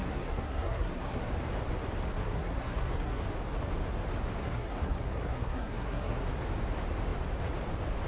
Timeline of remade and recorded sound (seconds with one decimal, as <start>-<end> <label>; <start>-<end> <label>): 0.0-1.3 remade; 1.3-2.2 recorded; 2.2-3.2 remade; 3.2-4.4 recorded; 4.4-6.2 remade; 6.2-8.1 recorded